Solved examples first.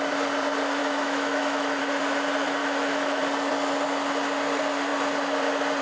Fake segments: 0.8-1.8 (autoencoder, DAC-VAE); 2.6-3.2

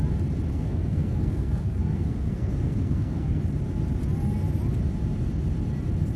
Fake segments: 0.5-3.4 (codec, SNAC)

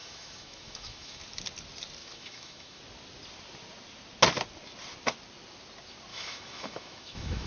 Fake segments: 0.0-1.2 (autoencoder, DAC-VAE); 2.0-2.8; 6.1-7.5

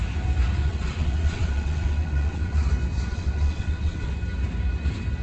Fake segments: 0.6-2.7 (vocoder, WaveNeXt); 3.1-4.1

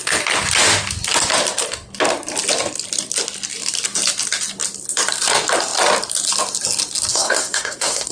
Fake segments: 7.1-8.1 (codec, SNAC)

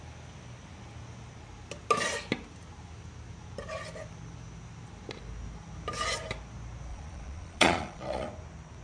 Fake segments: 6.9-8.3 (vocoder, Vocos)